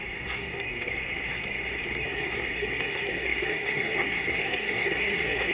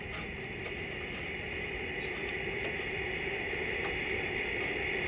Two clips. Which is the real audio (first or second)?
second